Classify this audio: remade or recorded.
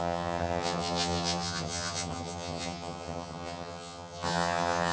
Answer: remade